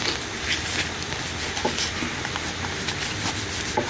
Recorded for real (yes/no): yes